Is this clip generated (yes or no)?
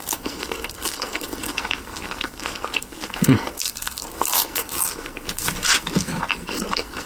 yes